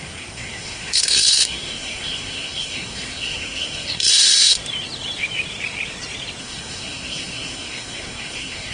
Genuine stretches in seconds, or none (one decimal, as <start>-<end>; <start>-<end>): 4.6-6.4